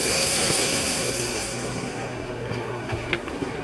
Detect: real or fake fake